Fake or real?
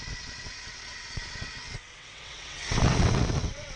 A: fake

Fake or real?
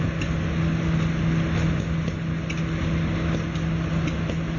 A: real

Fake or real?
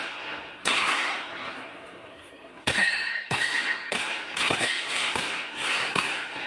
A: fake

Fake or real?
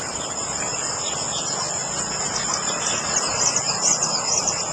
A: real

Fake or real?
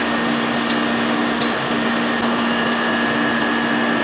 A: real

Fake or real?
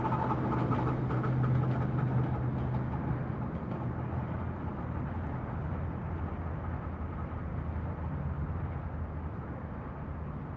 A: real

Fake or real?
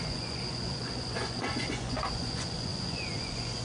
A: fake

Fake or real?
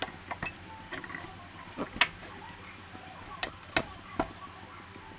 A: real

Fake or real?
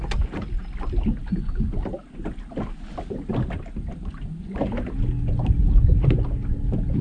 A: real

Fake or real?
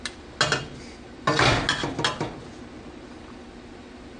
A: real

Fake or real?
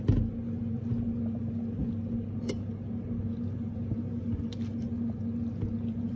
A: real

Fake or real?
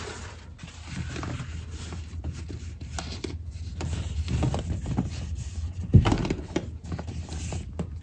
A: real